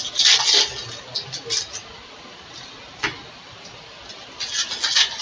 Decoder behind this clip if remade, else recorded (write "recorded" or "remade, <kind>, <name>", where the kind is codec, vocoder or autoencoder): recorded